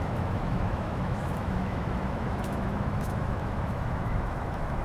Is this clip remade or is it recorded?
remade